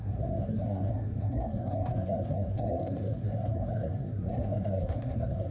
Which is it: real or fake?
fake